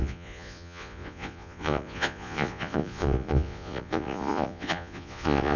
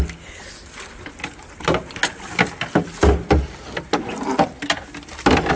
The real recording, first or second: second